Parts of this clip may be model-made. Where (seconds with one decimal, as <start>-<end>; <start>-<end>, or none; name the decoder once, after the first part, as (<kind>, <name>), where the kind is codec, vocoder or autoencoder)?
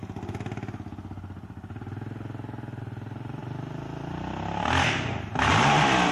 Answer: 2.8-3.4 (vocoder, BigVGAN v2); 5.1-6.1